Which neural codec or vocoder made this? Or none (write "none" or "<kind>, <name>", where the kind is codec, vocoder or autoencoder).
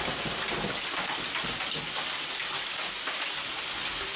none